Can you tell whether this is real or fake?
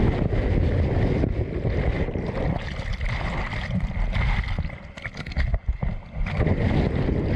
real